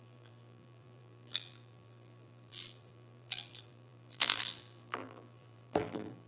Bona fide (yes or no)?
no